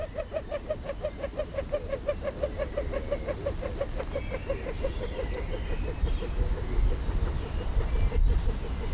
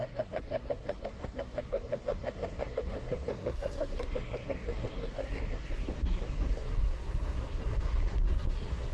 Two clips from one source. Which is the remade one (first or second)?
second